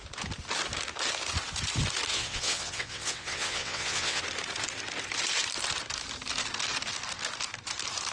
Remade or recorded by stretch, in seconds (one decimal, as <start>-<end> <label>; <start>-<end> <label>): 0.0-2.1 recorded; 2.1-4.2 remade; 4.2-8.1 recorded